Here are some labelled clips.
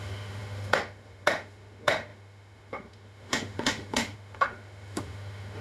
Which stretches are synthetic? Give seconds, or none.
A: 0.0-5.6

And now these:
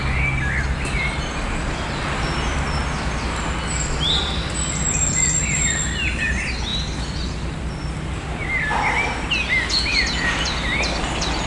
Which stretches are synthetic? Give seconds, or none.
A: none

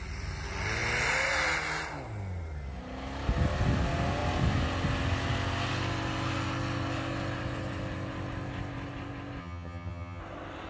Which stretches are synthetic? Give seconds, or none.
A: 9.4-10.2